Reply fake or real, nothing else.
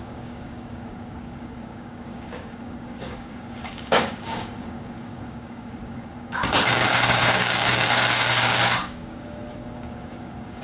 fake